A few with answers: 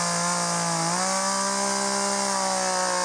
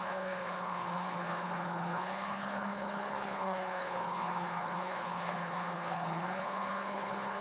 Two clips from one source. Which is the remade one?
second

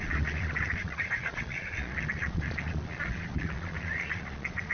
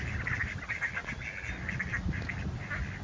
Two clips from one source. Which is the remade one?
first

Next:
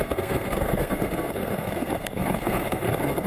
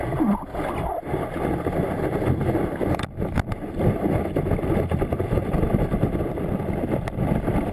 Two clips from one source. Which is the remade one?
first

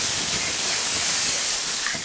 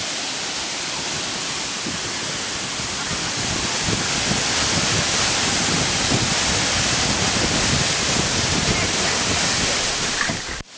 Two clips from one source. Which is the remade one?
first